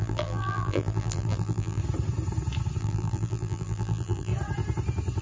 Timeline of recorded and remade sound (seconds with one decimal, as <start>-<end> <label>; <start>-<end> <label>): 0.0-1.8 remade; 1.8-2.8 recorded; 2.8-4.3 remade; 4.3-5.2 recorded